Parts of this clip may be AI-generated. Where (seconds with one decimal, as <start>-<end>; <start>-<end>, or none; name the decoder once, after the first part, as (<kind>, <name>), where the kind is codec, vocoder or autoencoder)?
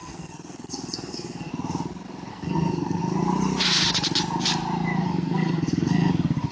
0.0-1.5 (codec, SNAC); 2.3-3.0; 5.0-6.1